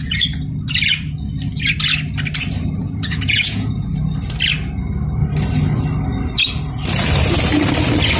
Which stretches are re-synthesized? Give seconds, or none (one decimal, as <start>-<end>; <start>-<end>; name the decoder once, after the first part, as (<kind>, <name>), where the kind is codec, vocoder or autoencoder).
2.8-3.9 (vocoder, Vocos)

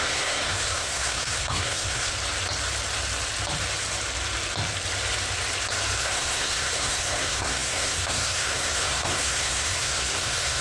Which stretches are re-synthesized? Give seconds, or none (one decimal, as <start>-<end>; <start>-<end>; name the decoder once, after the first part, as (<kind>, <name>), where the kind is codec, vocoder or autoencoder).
0.0-2.1 (codec, SNAC); 6.0-10.6